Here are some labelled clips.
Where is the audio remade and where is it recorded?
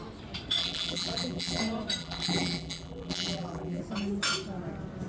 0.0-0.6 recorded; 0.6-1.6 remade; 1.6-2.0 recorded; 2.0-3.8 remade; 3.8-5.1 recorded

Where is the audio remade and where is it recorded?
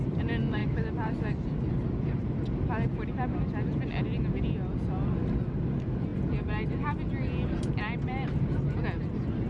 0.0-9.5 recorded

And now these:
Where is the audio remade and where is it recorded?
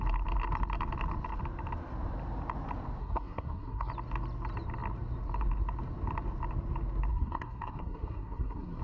0.0-3.0 recorded; 3.0-3.9 remade; 3.9-7.1 recorded; 7.1-8.8 remade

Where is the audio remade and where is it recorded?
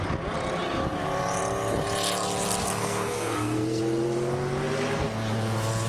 0.0-2.6 recorded; 2.6-3.8 remade; 3.8-5.9 recorded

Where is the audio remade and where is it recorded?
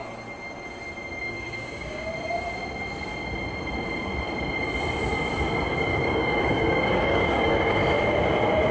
0.0-1.2 recorded; 1.2-2.1 remade; 2.1-5.7 recorded; 5.7-7.8 remade; 7.8-8.7 recorded